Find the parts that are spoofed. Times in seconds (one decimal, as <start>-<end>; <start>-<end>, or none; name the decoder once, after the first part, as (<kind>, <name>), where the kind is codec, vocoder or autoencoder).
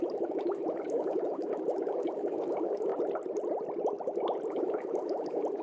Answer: 0.0-2.9 (autoencoder, DAC-VAE); 4.5-5.6